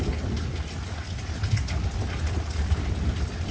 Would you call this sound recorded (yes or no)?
yes